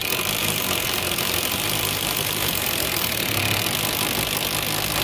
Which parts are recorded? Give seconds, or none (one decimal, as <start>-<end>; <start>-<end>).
0.0-0.4; 3.4-5.0